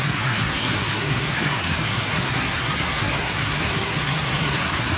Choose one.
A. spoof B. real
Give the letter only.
A